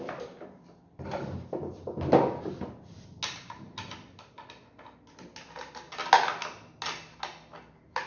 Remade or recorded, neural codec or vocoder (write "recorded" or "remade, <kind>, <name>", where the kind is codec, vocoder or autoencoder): recorded